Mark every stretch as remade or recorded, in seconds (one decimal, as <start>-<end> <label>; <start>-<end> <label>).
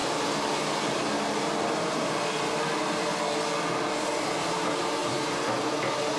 0.0-5.0 recorded; 5.0-5.8 remade; 5.8-6.2 recorded